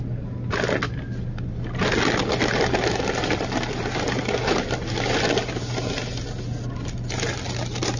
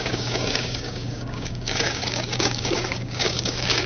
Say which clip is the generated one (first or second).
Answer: second